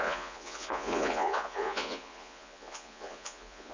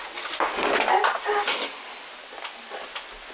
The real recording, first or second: second